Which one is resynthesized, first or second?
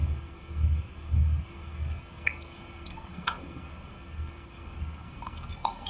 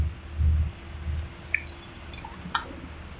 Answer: first